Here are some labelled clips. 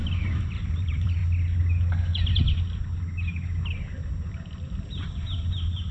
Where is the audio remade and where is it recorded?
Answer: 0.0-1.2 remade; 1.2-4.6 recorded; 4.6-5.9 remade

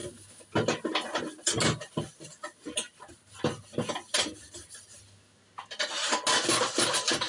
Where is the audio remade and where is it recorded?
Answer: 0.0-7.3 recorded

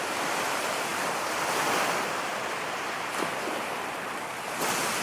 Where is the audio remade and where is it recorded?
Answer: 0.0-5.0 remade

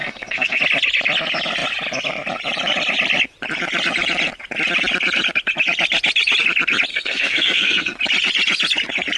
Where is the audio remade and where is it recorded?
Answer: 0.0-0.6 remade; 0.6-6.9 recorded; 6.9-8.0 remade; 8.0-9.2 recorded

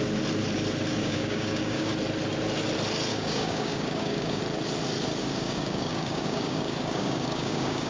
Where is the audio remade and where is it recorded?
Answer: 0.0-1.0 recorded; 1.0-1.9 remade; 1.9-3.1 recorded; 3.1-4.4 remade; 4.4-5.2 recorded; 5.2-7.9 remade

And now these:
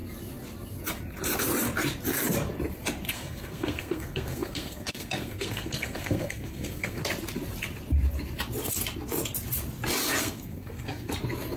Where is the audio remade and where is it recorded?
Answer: 0.0-3.1 recorded; 3.1-7.0 remade; 7.0-10.2 recorded; 10.2-11.1 remade; 11.1-11.6 recorded